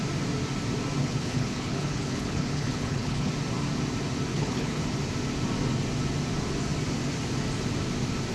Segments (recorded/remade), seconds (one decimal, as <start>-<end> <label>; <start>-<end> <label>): 0.0-1.0 recorded; 1.0-3.3 remade; 3.3-4.3 recorded; 4.3-4.8 remade; 4.8-8.3 recorded